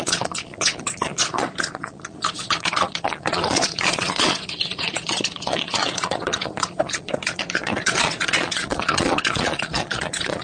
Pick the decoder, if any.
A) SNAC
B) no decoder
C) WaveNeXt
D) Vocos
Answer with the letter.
D